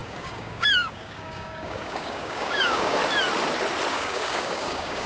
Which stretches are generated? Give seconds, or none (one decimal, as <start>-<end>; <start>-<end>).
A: 0.0-3.0; 3.9-5.1